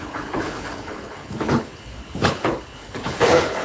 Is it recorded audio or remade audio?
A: remade